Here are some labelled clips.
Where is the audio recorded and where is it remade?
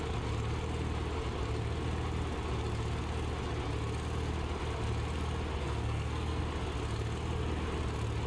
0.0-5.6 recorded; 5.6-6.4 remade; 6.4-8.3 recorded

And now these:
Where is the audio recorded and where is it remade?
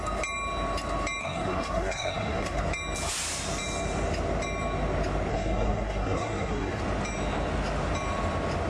0.0-1.2 recorded; 1.2-2.6 remade; 2.6-5.3 recorded; 5.3-6.8 remade; 6.8-8.7 recorded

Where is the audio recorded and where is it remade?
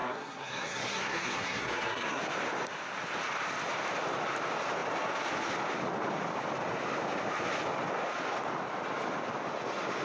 0.0-2.2 remade; 2.2-10.0 recorded